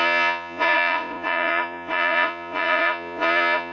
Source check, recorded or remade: remade